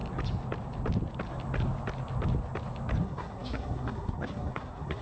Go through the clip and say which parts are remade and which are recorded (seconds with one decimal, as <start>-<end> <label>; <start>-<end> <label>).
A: 0.0-3.0 recorded; 3.0-5.0 remade